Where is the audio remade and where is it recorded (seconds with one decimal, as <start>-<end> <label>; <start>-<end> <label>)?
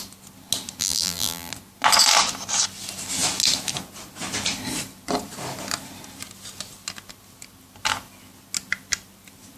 0.0-0.8 recorded; 0.8-1.5 remade; 1.5-9.6 recorded